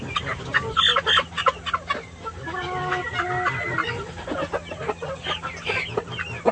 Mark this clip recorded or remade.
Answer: recorded